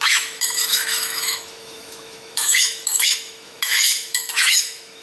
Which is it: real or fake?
fake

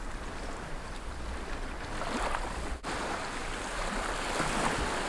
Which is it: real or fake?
real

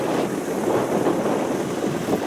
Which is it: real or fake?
real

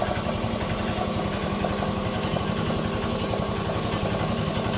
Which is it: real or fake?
real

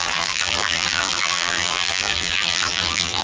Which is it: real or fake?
fake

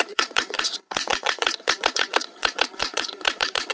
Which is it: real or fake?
fake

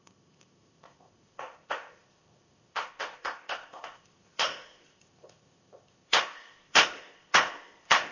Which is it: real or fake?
fake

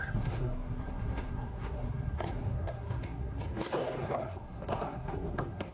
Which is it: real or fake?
fake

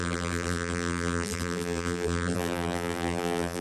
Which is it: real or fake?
fake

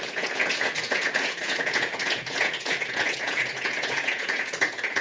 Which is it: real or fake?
fake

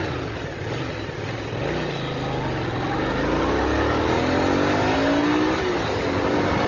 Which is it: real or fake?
real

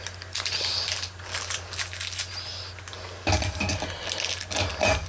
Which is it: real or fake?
real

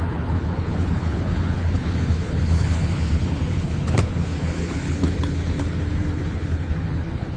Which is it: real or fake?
fake